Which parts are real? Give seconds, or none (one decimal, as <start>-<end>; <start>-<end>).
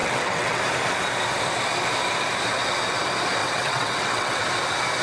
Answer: 0.6-3.4; 4.4-5.0